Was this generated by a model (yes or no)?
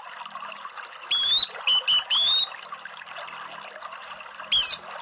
no